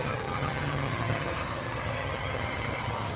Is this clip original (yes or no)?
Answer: no